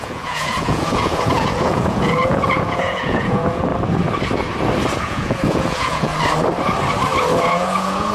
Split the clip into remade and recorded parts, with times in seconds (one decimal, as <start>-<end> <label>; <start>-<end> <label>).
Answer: 0.0-3.7 remade; 3.7-5.0 recorded; 5.0-6.1 remade; 6.1-7.4 recorded; 7.4-8.1 remade